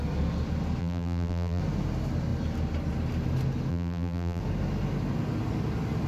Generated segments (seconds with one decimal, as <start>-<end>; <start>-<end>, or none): 0.8-1.6; 3.7-4.4